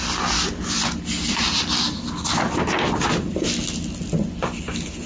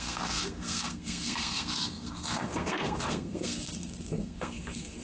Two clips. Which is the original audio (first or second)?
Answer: first